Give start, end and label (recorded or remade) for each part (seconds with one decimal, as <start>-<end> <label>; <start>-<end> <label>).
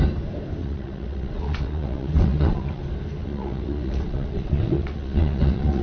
0.0-0.6 recorded; 0.6-2.8 remade; 2.8-3.2 recorded; 3.2-5.8 remade